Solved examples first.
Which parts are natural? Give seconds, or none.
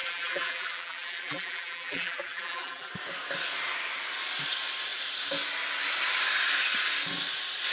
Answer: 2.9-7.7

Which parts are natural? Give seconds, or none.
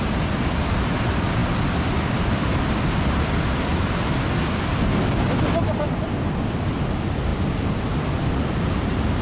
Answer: 0.0-9.2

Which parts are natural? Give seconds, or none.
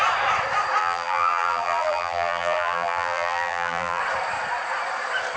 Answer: 0.0-0.8; 4.0-5.4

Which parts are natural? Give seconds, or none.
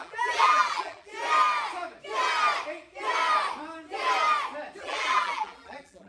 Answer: 1.1-4.8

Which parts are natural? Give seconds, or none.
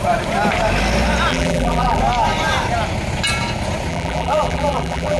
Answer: 0.0-1.3; 2.0-3.9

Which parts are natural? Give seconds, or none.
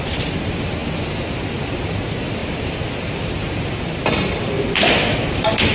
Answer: 0.8-1.7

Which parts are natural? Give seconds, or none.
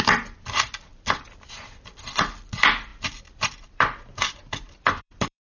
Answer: 0.0-0.9; 1.5-2.9